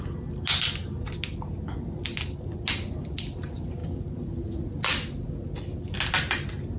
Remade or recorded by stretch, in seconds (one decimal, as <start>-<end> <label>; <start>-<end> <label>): 0.0-6.8 recorded